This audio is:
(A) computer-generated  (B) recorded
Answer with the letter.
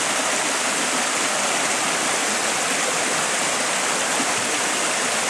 B